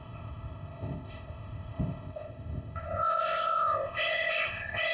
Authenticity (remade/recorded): remade